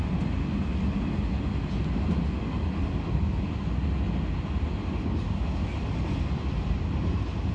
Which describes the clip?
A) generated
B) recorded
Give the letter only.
B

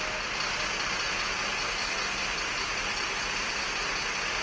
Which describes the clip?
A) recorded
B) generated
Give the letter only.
A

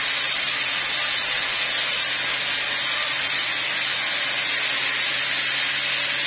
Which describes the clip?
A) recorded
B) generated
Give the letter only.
A